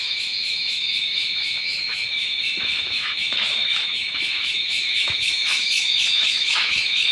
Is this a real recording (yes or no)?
no